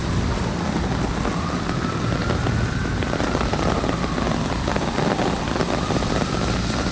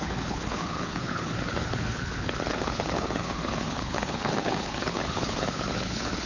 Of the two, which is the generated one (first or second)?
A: second